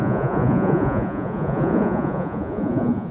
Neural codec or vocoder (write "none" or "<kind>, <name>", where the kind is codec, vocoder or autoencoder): vocoder, Vocos